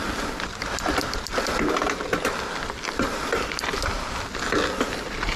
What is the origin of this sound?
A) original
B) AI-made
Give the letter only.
A